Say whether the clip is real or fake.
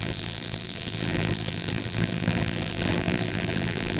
fake